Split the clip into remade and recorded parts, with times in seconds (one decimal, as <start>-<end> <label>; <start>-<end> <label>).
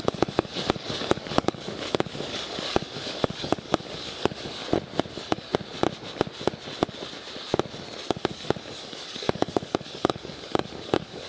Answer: 0.0-4.6 remade; 4.6-5.1 recorded; 5.1-5.5 remade; 5.5-8.1 recorded; 8.1-11.3 remade